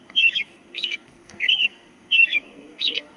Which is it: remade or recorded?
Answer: remade